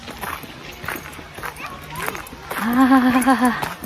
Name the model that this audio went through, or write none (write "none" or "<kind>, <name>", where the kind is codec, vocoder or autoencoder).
none